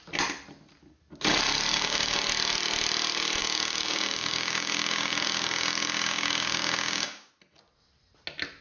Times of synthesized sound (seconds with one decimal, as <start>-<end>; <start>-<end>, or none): 1.7-2.2; 3.4-7.3